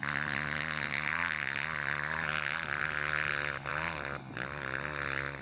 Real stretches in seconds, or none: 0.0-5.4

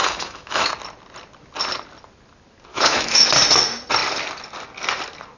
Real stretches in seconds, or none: 0.7-2.7; 3.3-5.4

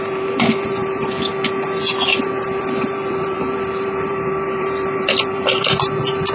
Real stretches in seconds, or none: 1.3-2.6

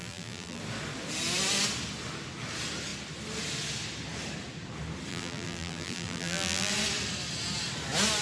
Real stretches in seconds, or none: 0.6-5.1; 6.7-8.2